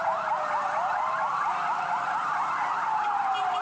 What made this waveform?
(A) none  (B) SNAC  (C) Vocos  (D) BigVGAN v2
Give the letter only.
A